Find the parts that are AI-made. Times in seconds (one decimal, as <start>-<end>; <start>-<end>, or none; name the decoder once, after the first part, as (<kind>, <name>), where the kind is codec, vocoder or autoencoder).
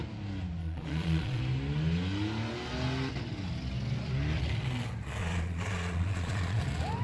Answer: 0.6-1.4 (vocoder, Vocos); 5.2-6.6